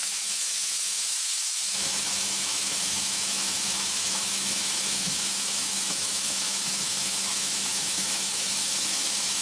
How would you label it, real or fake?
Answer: fake